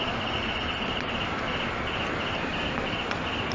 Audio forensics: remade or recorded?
recorded